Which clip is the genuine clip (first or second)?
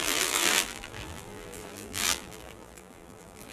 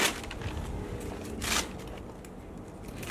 second